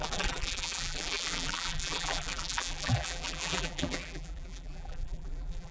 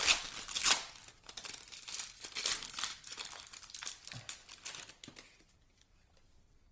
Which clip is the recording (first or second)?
second